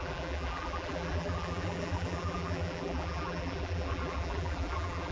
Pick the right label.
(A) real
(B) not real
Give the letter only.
B